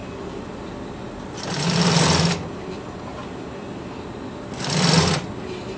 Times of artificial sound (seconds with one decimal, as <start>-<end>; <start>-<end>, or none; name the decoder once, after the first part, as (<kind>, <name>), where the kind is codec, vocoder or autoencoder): none

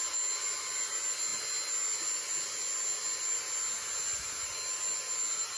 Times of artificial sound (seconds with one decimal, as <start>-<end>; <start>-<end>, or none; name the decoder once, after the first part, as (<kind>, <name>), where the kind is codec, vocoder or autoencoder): none

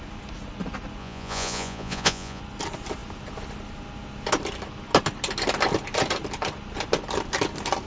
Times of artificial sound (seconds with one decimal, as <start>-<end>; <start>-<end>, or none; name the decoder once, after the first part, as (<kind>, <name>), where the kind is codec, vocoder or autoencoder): 1.0-2.4 (vocoder, Vocos)

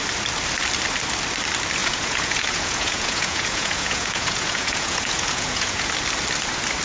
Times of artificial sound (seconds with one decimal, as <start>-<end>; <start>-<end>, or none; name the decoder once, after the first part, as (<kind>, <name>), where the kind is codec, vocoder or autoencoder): 1.8-5.9 (vocoder, Vocos)

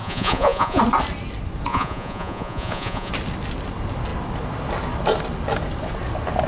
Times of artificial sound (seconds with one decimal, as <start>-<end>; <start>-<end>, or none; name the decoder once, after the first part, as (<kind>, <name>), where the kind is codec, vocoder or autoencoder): 0.0-0.8 (vocoder, Vocos); 1.7-3.1

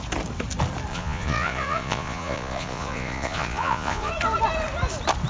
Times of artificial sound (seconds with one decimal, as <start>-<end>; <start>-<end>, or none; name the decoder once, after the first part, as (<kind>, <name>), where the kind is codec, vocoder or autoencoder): 0.9-4.1 (vocoder, Vocos)

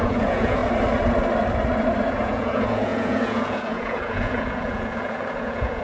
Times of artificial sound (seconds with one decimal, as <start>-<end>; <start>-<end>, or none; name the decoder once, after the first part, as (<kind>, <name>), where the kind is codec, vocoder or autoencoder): 0.0-0.6 (vocoder, Vocos); 2.0-5.8

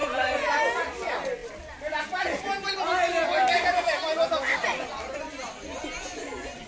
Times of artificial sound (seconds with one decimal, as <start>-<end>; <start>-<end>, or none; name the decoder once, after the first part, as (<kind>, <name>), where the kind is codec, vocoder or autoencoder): 0.0-0.6 (vocoder, Vocos)